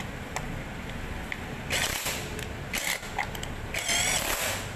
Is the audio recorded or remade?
recorded